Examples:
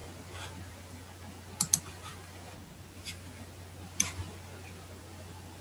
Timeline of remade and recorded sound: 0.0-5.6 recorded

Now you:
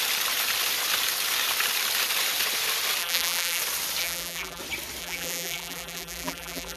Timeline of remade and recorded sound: 0.0-3.0 recorded; 3.0-3.6 remade; 3.6-4.0 recorded; 4.0-4.6 remade; 4.6-5.0 recorded; 5.0-6.8 remade